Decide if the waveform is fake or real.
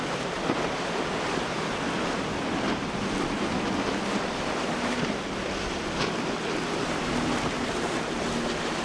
real